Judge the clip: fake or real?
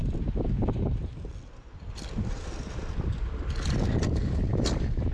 real